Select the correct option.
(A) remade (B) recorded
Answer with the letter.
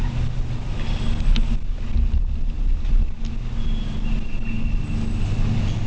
B